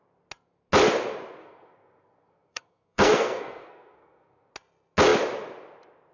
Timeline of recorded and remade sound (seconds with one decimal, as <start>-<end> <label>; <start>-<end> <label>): 0.0-1.4 recorded; 1.4-4.5 remade; 4.5-6.1 recorded